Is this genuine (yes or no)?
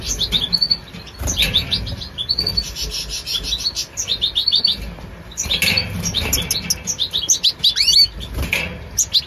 yes